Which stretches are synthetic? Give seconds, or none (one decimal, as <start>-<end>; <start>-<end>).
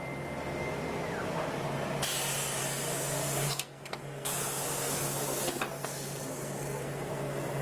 2.6-7.6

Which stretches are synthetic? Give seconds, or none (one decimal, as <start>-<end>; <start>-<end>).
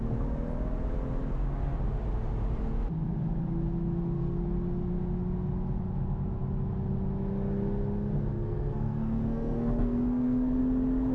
8.3-10.6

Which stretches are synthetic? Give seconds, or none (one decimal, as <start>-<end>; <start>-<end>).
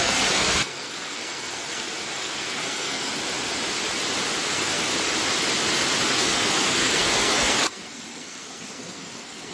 0.0-3.1; 4.5-4.9; 6.1-9.5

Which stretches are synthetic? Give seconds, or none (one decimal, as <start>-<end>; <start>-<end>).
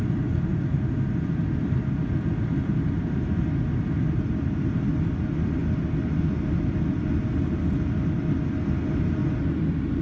none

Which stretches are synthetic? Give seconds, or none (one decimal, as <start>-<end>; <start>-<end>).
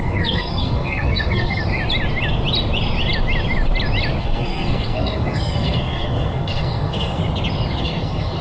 0.0-1.6; 4.2-7.2; 7.8-8.4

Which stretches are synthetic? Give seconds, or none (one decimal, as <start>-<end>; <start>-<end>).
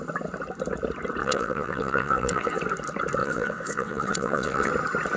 1.2-2.6; 3.2-4.7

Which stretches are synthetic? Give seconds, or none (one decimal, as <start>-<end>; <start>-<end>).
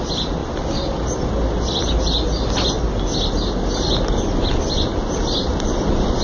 none